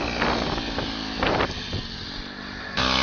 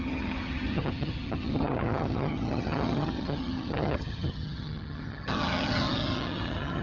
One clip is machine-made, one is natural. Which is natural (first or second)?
first